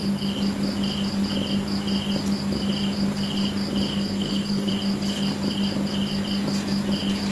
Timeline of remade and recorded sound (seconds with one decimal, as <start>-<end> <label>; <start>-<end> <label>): 0.0-3.9 recorded; 3.9-4.7 remade; 4.7-7.3 recorded